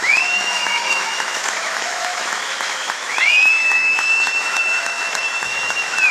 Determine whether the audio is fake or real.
fake